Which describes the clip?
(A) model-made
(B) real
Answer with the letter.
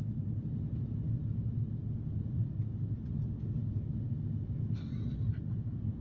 B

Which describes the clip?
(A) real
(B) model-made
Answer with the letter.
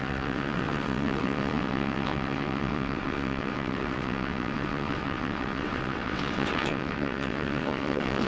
B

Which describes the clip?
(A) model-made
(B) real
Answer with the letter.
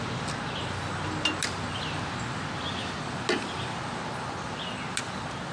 B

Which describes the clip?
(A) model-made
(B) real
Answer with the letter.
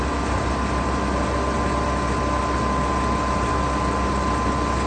B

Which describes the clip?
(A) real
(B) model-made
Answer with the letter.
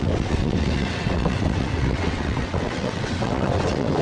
B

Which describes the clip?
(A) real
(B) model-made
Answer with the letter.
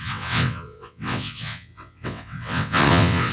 B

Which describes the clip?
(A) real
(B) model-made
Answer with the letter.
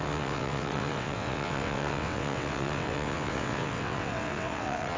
B